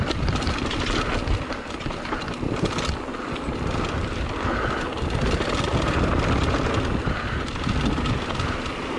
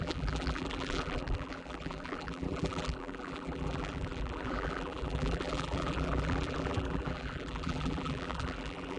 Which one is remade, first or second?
second